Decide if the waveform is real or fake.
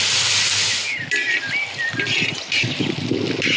real